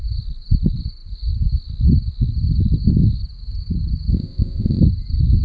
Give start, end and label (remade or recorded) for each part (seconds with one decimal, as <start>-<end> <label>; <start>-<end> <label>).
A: 0.0-4.1 recorded; 4.1-4.8 remade; 4.8-5.4 recorded